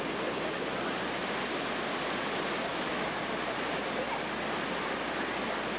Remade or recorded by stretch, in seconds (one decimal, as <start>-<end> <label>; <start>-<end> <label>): 0.0-2.7 recorded; 2.7-3.2 remade; 3.2-5.8 recorded